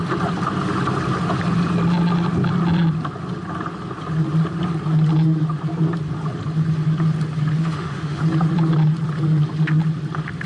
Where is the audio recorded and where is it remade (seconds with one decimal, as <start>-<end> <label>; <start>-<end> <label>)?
0.0-7.6 recorded; 7.6-8.2 remade; 8.2-10.5 recorded